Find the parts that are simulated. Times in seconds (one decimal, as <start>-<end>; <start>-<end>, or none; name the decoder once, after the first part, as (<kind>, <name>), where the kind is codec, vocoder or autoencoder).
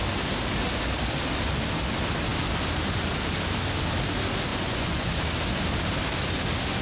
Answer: 4.5-5.1 (vocoder, Vocos)